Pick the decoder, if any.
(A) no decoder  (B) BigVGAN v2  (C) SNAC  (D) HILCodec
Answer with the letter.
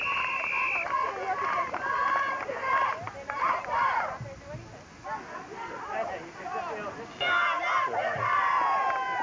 A